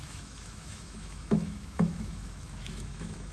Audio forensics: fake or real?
fake